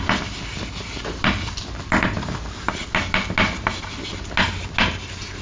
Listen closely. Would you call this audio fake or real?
real